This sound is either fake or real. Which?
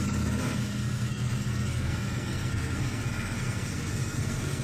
fake